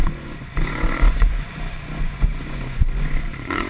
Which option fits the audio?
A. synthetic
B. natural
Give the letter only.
A